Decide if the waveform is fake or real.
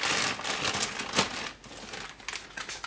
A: real